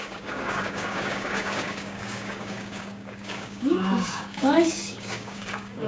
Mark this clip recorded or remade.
remade